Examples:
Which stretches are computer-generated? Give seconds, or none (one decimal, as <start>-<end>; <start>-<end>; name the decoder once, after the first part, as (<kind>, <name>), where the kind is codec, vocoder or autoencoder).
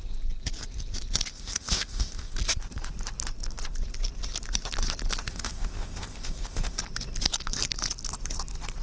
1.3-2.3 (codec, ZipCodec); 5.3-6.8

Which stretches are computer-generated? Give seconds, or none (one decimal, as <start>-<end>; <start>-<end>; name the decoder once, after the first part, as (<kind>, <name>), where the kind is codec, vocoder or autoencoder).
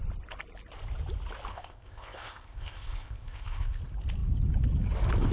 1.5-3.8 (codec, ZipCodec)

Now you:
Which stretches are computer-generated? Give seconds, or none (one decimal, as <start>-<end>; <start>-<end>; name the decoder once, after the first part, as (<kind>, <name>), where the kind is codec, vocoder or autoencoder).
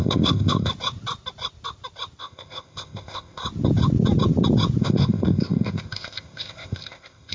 0.0-0.7 (codec, ZipCodec); 2.2-3.4; 4.8-7.3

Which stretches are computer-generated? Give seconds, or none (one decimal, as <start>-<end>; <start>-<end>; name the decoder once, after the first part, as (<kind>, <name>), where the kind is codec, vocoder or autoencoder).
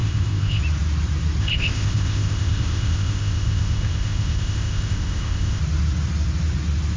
0.0-0.6 (codec, ZipCodec); 1.4-5.6